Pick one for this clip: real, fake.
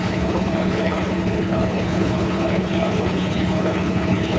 fake